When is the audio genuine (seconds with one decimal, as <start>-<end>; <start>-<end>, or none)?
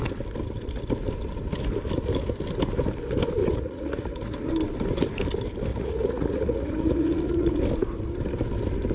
0.0-3.4; 4.5-5.7; 7.6-8.9